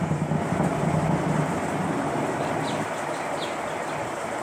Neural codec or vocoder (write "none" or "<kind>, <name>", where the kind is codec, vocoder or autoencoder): vocoder, BigVGAN v2